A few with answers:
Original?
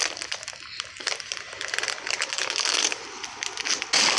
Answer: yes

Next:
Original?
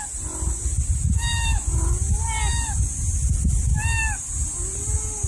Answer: yes